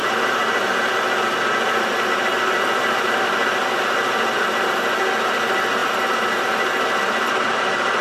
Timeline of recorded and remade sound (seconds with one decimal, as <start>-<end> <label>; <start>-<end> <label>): 0.0-8.0 recorded